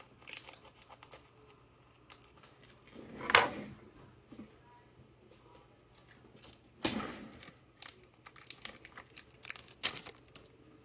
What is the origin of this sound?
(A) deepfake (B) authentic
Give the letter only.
B